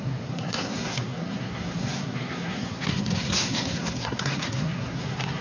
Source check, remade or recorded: remade